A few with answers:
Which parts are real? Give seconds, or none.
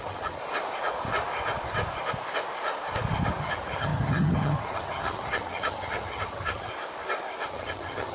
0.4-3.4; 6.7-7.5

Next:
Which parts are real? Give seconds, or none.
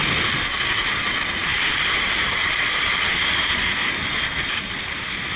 0.0-5.4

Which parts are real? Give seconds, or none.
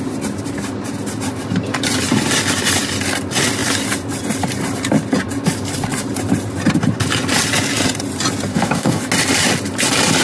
0.0-8.5; 9.0-10.2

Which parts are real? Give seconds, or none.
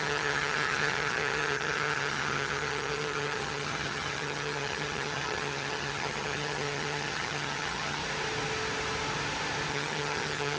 8.0-9.7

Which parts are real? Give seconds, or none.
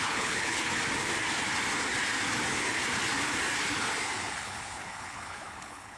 0.7-4.3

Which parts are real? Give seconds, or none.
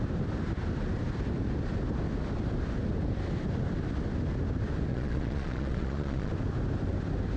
0.0-4.9; 6.3-7.4